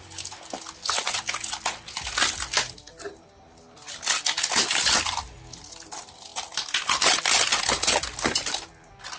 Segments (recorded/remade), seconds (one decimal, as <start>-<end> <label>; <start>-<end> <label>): 0.0-9.2 recorded